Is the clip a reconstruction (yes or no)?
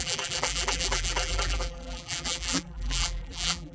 yes